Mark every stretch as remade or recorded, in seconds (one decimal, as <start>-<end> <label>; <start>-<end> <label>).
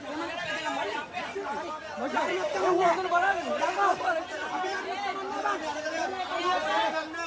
0.0-7.3 recorded